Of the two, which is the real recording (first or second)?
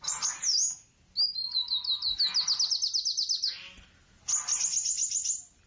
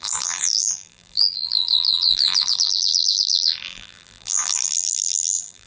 first